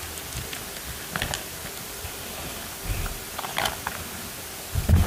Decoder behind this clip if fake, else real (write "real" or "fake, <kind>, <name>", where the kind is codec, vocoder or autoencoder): real